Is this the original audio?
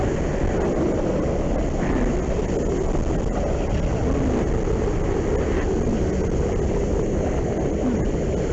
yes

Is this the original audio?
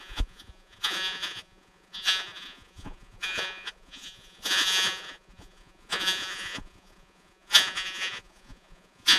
no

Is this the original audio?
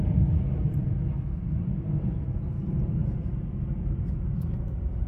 no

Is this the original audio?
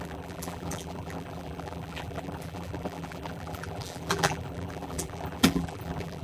no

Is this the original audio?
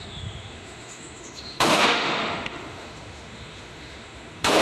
no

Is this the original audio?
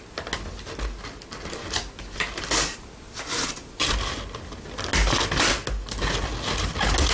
yes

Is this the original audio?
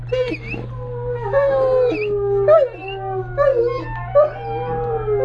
yes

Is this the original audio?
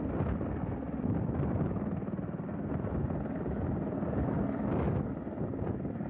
yes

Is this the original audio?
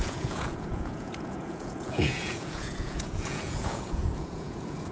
no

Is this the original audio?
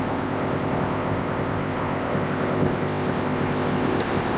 no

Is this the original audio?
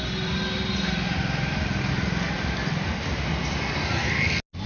yes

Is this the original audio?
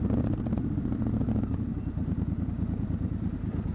no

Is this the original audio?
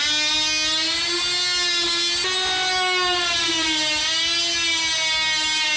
yes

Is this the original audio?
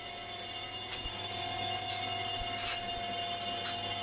yes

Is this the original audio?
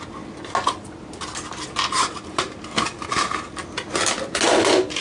yes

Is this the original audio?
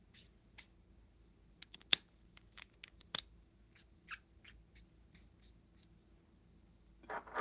yes